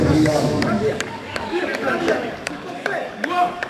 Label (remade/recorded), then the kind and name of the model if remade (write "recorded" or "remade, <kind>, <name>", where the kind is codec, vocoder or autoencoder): remade, codec, DAC